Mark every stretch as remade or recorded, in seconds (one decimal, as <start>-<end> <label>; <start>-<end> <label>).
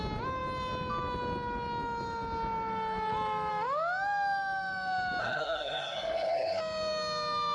0.0-5.2 recorded; 5.2-6.6 remade; 6.6-7.5 recorded